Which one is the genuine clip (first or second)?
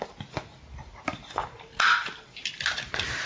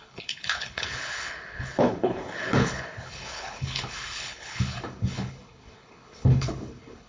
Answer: first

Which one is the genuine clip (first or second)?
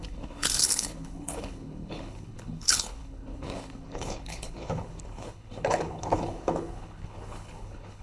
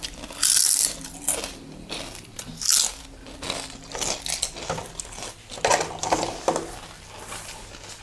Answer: second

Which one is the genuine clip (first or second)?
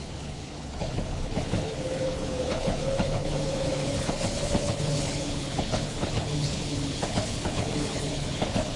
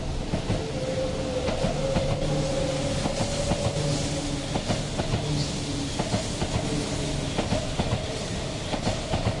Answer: second